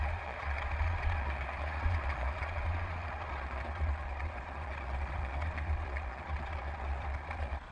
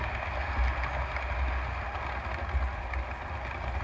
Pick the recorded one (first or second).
second